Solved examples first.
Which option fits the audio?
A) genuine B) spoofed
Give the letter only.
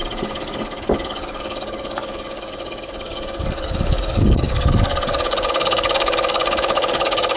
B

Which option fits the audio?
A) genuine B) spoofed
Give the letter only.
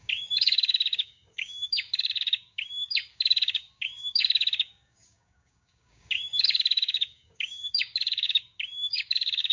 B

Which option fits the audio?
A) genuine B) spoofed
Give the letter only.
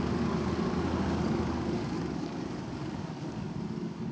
B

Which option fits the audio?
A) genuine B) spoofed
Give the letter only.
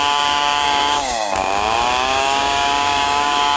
B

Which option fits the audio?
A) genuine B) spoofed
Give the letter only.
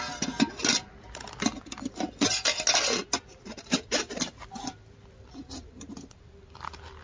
A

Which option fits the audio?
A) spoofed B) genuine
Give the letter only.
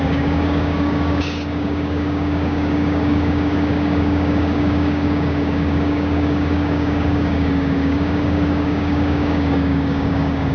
A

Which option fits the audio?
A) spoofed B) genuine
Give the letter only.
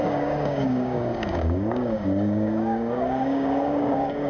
A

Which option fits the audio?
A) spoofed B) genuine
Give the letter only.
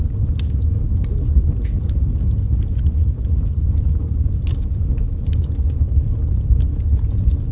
B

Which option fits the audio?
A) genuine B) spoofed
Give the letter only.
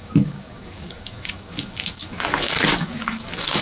B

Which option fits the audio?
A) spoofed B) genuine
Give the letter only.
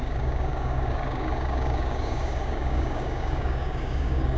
A